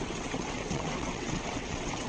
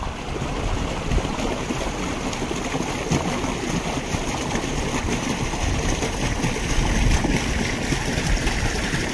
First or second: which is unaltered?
second